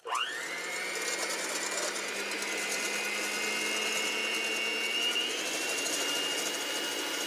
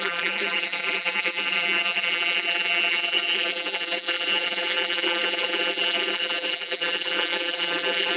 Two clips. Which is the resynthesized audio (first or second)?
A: second